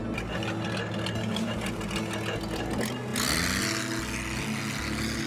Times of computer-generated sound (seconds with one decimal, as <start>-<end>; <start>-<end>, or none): 1.3-1.9